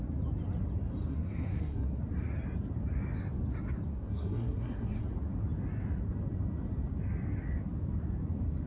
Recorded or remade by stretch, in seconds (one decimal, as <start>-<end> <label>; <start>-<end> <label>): 0.0-1.1 recorded; 1.1-2.0 remade; 2.0-3.9 recorded; 3.9-5.0 remade; 5.0-8.7 recorded

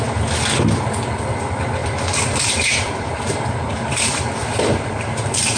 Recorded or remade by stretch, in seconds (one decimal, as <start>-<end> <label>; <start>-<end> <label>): 0.0-1.8 recorded; 1.8-5.6 remade

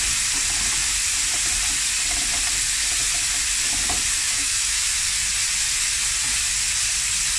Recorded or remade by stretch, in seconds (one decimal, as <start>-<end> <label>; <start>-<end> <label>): 0.0-4.2 recorded; 4.2-5.0 remade; 5.0-7.4 recorded

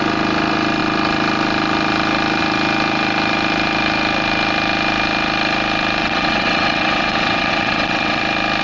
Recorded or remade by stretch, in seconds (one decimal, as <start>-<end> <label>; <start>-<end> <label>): 0.0-6.0 recorded; 6.0-8.2 remade; 8.2-8.6 recorded

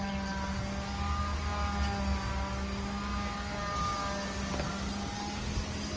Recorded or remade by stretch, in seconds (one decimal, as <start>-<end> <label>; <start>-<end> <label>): 0.0-6.0 recorded

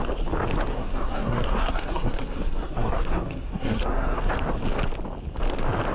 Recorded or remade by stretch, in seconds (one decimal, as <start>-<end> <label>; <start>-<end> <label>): 0.0-0.7 recorded; 0.7-4.2 remade; 4.2-5.9 recorded

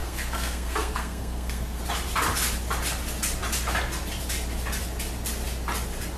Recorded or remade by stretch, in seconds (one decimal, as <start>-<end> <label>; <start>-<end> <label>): 0.0-1.8 remade; 1.8-6.2 recorded

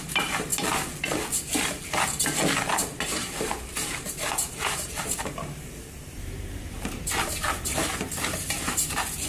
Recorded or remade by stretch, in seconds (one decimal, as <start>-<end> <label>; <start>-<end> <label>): 0.0-0.5 remade; 0.5-2.7 recorded; 2.7-9.3 remade